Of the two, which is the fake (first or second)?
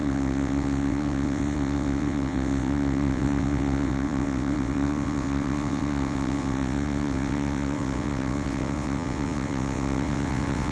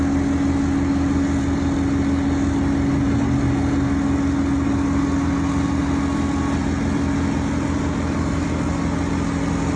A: first